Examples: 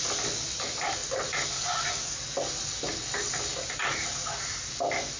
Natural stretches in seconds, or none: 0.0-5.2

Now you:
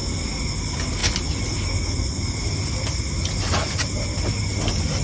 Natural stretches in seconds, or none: 0.0-5.0

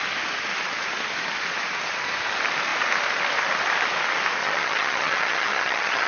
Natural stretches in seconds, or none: 0.0-4.4

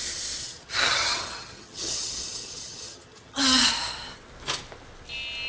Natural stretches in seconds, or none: 0.0-0.4; 3.7-5.5

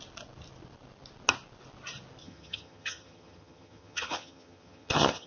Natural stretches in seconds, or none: 0.0-2.2

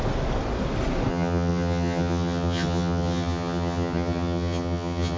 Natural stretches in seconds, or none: 0.0-1.1